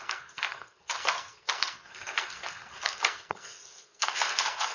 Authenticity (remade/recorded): remade